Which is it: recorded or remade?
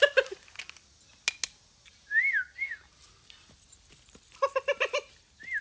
recorded